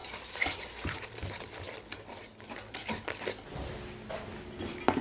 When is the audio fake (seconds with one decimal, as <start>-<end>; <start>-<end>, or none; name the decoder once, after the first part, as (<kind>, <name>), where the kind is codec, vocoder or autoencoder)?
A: none